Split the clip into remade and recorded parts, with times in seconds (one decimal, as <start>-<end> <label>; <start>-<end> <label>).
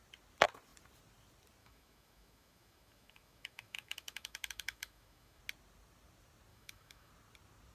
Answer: 0.0-1.6 recorded; 1.6-5.4 remade; 5.4-6.5 recorded; 6.5-7.1 remade; 7.1-7.7 recorded